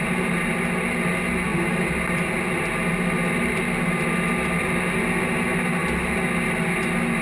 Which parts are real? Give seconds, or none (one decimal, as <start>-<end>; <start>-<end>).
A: 0.0-7.2